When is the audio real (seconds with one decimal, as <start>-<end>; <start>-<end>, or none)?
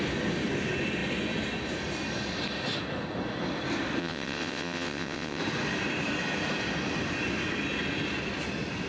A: 0.0-4.0; 5.4-8.9